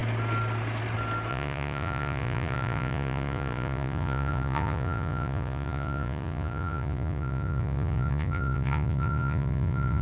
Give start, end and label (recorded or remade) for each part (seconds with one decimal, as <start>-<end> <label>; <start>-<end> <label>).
0.0-1.3 recorded; 1.3-10.0 remade